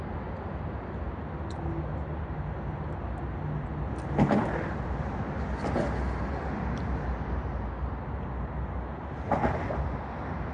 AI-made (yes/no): no